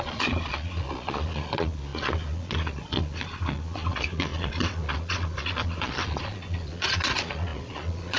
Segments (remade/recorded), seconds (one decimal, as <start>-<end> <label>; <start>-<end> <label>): 0.0-8.2 remade